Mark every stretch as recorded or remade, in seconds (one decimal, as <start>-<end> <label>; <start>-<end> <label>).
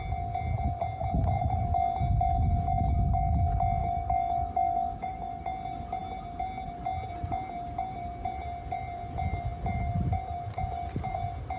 0.0-3.8 recorded; 3.8-5.4 remade; 5.4-11.6 recorded